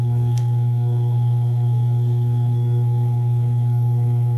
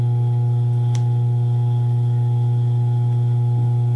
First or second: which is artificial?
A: first